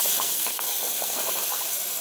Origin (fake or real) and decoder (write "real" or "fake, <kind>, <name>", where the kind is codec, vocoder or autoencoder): fake, codec, SNAC